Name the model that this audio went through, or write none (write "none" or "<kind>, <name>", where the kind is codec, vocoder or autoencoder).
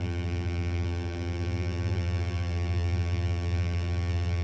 vocoder, BigVGAN v2